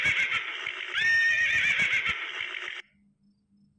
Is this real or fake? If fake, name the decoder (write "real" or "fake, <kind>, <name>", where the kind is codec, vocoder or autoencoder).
real